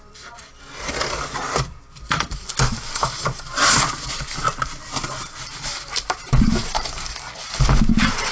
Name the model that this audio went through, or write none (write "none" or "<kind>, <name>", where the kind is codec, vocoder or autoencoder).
none